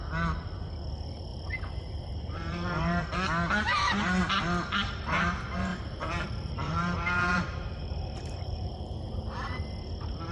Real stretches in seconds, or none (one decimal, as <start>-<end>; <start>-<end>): 0.0-1.3; 3.0-3.7; 4.2-5.7; 9.1-10.3

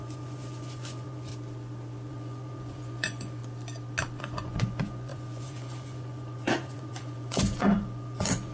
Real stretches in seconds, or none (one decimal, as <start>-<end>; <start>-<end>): 1.3-2.1; 3.4-4.2

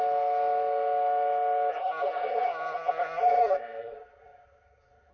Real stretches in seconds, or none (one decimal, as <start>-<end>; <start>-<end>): 0.0-1.7

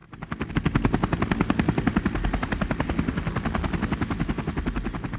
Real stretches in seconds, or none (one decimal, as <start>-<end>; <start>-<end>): 0.0-5.2